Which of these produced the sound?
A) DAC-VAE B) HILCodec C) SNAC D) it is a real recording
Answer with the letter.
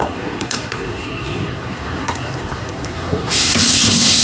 C